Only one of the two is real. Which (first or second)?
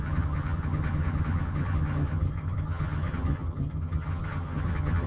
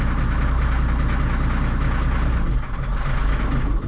second